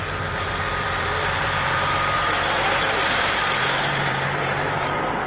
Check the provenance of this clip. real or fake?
fake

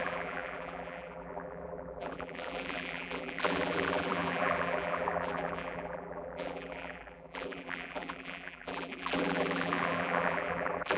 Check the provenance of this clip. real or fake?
fake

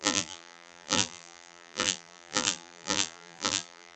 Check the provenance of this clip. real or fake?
fake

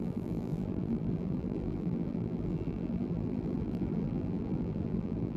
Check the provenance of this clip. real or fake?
fake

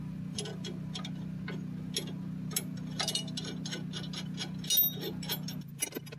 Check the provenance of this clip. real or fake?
real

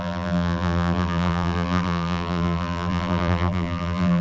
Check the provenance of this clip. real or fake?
fake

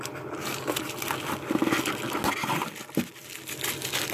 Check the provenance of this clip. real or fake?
real